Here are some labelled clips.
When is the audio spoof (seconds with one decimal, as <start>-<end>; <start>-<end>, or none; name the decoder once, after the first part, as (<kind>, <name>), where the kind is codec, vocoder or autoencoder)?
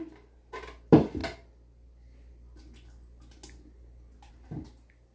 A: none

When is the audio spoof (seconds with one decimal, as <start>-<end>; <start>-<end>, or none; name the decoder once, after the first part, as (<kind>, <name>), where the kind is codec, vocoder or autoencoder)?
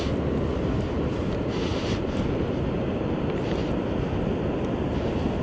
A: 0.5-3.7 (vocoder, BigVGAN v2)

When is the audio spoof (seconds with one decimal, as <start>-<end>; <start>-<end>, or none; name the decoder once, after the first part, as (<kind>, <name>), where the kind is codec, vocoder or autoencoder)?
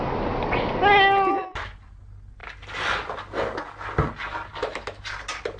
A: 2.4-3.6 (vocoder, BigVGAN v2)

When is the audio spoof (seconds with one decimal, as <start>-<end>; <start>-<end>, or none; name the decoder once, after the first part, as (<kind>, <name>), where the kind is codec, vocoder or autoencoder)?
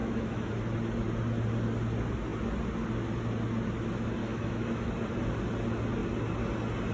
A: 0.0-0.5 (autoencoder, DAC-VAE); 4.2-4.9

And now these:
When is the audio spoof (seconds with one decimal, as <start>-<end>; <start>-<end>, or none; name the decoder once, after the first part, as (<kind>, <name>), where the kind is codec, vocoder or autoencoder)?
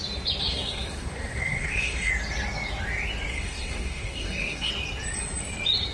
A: 0.4-2.1 (codec, SNAC); 3.3-4.7